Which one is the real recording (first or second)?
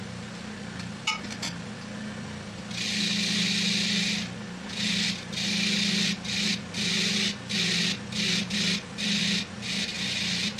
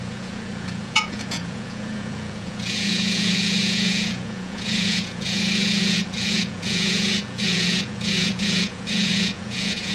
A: first